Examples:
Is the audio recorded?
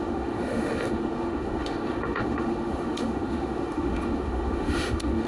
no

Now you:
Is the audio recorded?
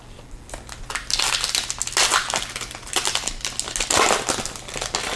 yes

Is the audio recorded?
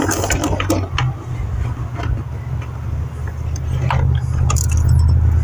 yes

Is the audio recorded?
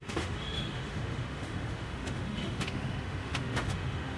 no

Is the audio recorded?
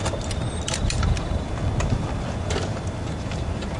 yes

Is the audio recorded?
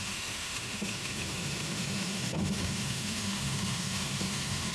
no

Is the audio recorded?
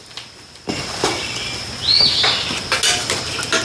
yes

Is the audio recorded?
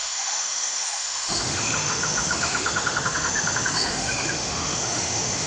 no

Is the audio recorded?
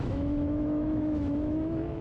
no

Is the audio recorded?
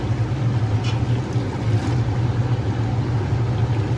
yes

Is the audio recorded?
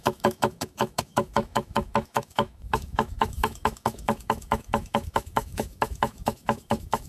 no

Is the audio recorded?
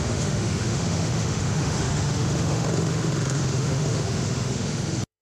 no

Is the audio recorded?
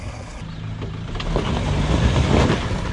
yes